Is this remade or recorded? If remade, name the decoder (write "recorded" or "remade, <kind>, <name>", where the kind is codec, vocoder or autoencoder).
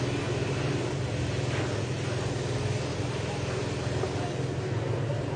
recorded